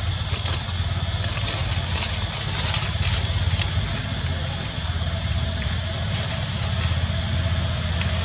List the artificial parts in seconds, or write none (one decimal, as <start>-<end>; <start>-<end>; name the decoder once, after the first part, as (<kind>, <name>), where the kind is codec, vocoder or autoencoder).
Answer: none